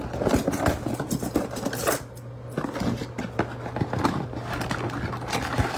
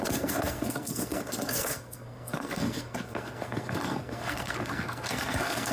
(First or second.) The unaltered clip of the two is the first